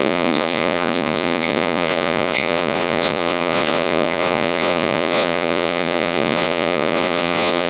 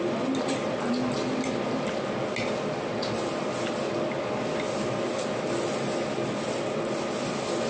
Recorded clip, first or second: second